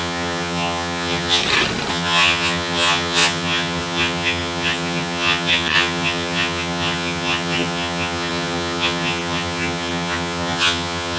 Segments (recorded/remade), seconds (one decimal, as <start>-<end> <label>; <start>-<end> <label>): 0.0-1.4 remade; 1.4-1.9 recorded; 1.9-11.2 remade